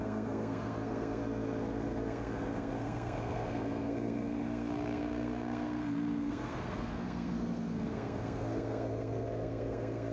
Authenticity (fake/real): fake